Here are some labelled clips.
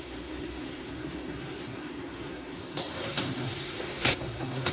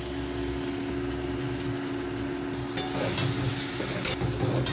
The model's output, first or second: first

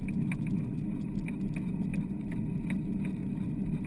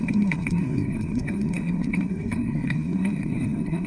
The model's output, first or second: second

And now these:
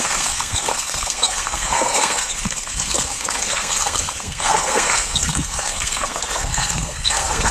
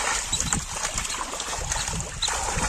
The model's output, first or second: first